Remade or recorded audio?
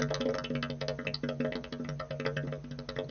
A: recorded